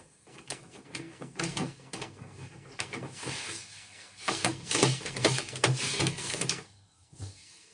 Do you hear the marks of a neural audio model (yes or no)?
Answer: yes